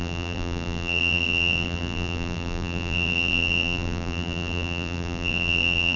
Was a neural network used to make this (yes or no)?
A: yes